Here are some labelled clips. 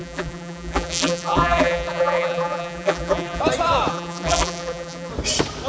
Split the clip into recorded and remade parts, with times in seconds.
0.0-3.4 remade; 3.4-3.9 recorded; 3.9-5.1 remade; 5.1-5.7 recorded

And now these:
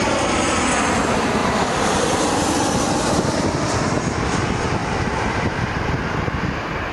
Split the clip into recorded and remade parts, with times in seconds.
0.0-1.4 recorded; 1.4-3.8 remade; 3.8-4.8 recorded; 4.8-5.7 remade; 5.7-6.9 recorded

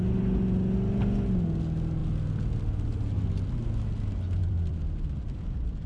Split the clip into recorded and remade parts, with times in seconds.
0.0-4.4 recorded; 4.4-5.9 remade